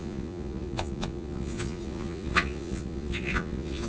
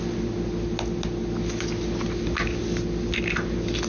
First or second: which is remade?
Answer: first